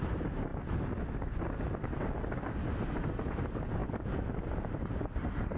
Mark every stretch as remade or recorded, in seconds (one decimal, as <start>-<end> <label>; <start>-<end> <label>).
0.0-0.5 remade; 0.5-3.3 recorded; 3.3-5.6 remade